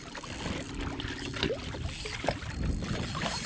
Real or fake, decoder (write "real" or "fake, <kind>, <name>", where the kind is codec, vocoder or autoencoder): real